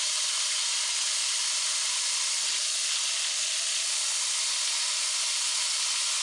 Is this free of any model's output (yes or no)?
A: yes